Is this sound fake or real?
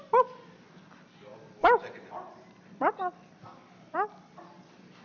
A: real